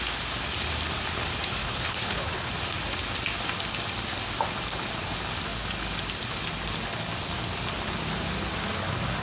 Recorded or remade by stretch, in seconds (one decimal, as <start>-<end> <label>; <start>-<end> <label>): 0.0-1.6 recorded; 1.6-2.5 remade; 2.5-9.2 recorded